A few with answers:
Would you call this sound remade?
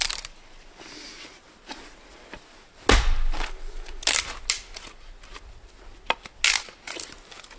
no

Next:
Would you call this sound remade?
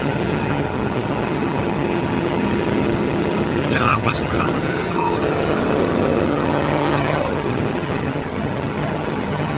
yes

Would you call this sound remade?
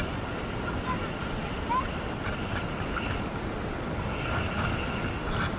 no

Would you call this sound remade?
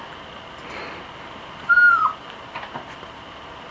no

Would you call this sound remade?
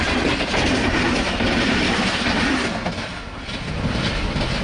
no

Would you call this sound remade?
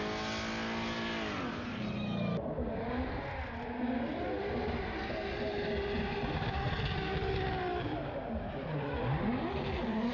no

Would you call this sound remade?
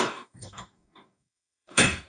yes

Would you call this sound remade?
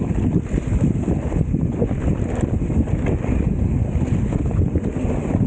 no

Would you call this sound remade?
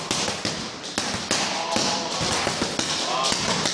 no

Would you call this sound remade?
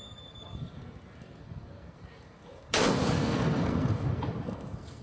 yes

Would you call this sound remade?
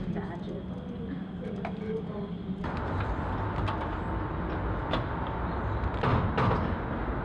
no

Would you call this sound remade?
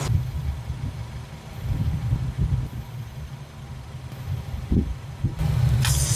no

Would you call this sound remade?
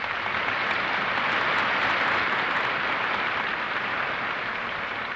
no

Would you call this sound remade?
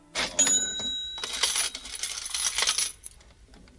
no